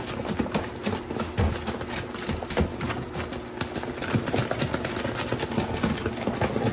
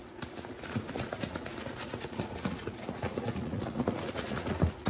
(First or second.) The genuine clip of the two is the first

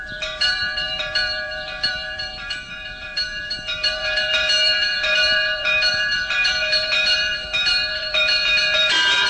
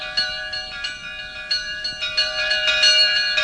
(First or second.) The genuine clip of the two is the second